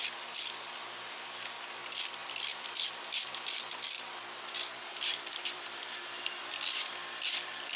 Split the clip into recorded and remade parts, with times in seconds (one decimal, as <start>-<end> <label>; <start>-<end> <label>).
0.0-2.2 recorded; 2.2-4.2 remade; 4.2-4.9 recorded; 4.9-6.4 remade; 6.4-7.8 recorded